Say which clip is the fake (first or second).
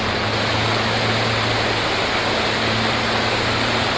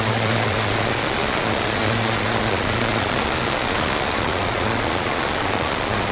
second